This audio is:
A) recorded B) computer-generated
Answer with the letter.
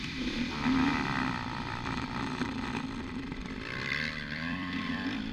B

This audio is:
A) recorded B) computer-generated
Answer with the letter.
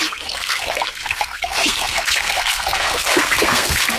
B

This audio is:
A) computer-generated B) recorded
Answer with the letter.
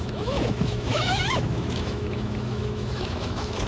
A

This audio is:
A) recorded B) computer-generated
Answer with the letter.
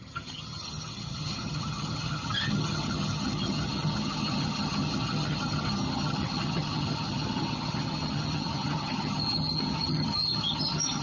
B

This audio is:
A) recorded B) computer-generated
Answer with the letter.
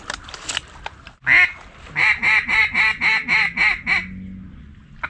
A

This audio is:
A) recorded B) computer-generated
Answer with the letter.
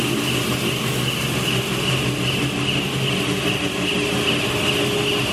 A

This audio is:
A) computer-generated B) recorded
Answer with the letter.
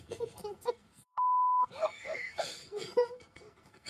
A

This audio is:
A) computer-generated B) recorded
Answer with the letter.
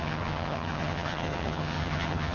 A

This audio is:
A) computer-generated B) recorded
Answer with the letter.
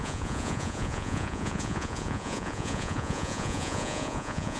A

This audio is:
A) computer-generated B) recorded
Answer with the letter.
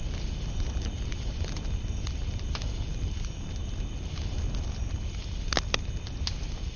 B